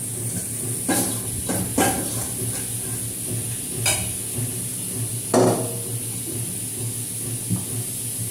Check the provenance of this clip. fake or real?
real